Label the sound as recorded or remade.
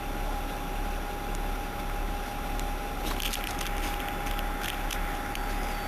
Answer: recorded